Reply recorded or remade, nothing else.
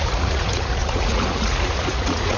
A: remade